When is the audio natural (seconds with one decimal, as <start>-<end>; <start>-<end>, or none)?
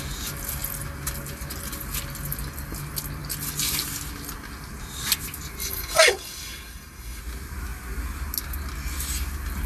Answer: 0.0-5.6; 7.2-9.7